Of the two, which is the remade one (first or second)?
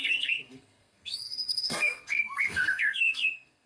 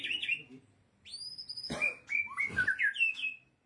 first